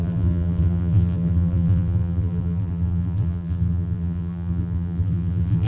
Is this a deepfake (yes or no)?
yes